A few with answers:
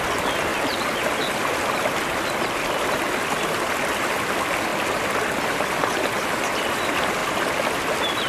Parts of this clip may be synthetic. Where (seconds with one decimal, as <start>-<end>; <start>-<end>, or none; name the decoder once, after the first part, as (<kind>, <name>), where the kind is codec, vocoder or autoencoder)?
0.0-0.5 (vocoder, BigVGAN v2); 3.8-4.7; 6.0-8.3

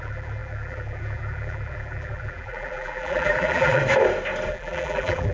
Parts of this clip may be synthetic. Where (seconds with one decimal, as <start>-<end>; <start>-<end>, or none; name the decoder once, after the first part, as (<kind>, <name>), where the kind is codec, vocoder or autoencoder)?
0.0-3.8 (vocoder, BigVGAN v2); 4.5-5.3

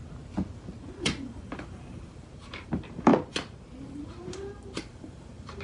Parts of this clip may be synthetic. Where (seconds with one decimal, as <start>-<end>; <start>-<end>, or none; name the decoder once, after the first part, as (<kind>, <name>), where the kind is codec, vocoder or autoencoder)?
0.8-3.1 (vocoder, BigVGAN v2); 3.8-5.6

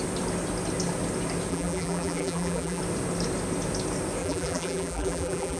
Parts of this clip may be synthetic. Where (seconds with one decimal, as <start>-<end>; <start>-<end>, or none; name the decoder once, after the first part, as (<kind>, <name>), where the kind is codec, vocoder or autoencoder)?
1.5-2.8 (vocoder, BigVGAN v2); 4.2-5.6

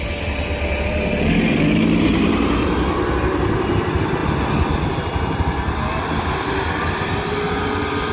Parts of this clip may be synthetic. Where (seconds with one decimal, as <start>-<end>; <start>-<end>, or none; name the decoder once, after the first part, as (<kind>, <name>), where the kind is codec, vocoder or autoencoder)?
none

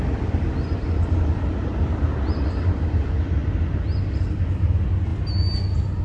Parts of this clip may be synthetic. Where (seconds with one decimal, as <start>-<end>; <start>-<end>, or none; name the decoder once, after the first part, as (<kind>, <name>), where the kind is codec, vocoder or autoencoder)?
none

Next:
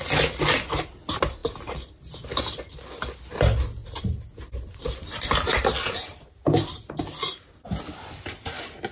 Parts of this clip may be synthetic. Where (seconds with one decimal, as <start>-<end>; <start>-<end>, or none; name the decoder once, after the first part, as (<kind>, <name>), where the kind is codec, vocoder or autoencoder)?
none